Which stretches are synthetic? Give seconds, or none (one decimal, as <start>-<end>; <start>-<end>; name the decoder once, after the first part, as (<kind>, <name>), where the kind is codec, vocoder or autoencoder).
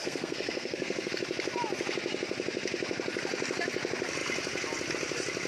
0.0-1.1 (codec, SNAC)